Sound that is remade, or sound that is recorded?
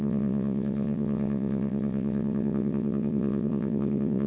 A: remade